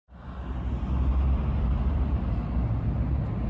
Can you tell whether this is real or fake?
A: real